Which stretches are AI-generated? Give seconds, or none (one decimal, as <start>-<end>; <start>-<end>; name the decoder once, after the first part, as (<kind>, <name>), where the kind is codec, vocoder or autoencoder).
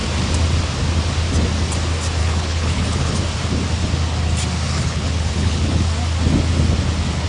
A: 2.2-3.2 (codec, HILCodec); 4.7-5.8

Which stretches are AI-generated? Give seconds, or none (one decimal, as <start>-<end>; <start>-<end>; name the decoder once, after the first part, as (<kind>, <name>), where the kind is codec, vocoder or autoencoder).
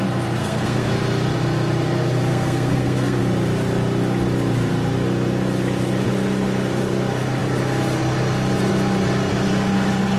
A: 0.4-0.9 (codec, SNAC); 2.3-3.2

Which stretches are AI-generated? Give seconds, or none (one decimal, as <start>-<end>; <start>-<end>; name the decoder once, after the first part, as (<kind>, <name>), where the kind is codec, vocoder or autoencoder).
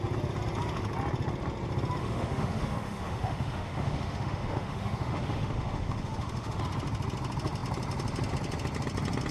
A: 2.0-6.6 (autoencoder, DAC-VAE)